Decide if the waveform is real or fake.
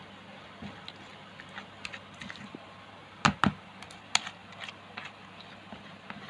real